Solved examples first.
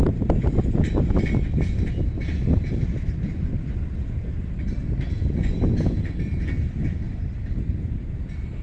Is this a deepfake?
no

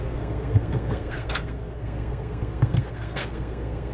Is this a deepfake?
yes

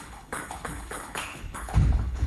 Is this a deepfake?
yes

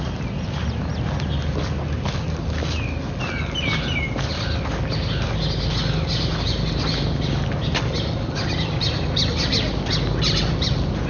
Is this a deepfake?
no